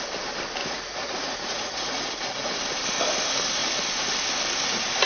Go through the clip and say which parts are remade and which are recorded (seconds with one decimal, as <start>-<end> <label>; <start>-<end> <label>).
0.0-0.6 recorded; 0.6-2.6 remade; 2.6-5.1 recorded